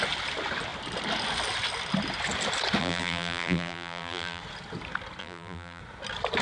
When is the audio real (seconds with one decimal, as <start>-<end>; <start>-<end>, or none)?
0.0-2.8; 4.4-5.2; 5.8-6.4